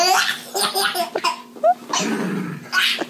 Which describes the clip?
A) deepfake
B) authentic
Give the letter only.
B